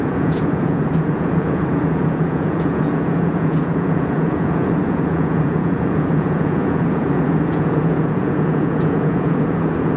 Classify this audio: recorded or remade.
remade